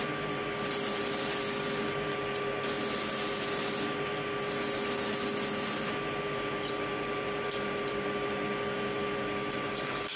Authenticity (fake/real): real